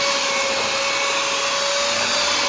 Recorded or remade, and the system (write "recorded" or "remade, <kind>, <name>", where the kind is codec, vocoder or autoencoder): recorded